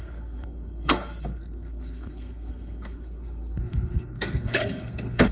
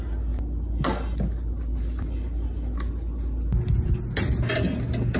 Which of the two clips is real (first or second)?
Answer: second